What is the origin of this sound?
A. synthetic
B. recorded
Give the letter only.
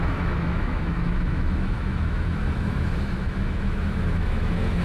A